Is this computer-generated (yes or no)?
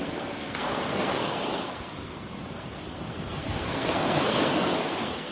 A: yes